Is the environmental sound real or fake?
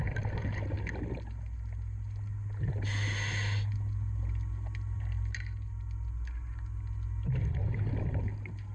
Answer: real